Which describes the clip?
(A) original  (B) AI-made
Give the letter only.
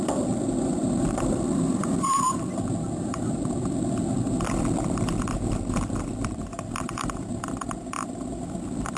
B